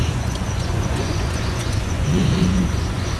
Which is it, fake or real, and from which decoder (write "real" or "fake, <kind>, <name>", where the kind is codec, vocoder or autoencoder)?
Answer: fake, vocoder, Vocos